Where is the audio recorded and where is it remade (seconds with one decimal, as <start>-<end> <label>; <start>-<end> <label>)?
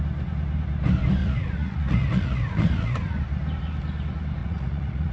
0.0-1.2 recorded; 1.2-3.2 remade; 3.2-4.4 recorded; 4.4-5.1 remade